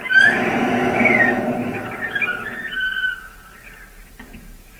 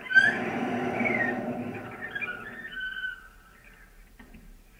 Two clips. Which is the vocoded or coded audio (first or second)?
second